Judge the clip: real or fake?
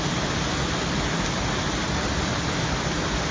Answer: real